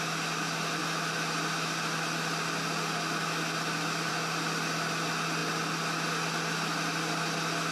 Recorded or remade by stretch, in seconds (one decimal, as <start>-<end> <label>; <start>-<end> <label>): 0.0-7.7 recorded